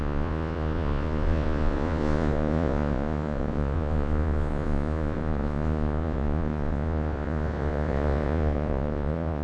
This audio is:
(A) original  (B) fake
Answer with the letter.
B